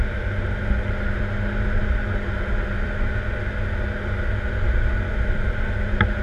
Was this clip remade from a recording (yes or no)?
no